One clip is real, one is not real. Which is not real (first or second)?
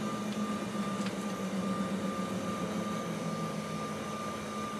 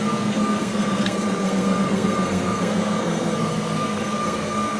second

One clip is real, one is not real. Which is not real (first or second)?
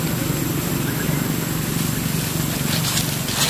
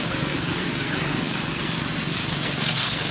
second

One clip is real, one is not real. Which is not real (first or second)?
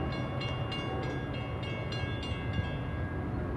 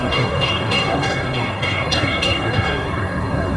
second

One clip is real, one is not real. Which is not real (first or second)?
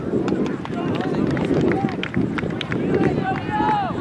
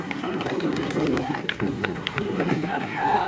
second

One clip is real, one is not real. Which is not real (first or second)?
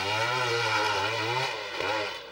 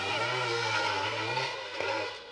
second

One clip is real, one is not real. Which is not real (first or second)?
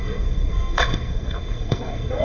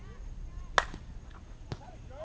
first